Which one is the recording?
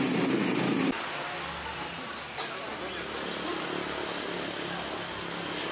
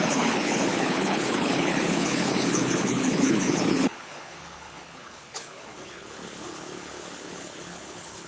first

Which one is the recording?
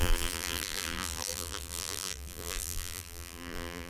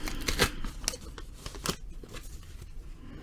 second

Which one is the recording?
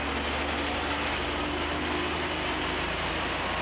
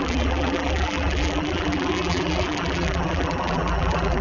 first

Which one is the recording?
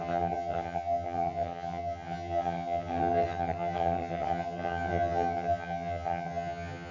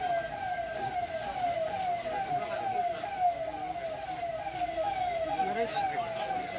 second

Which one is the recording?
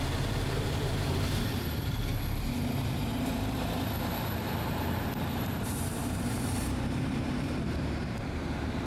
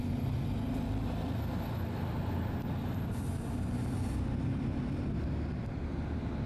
second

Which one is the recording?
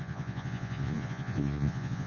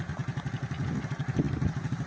second